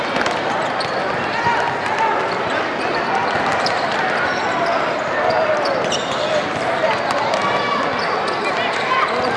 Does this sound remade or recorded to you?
recorded